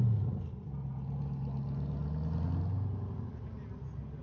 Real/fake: real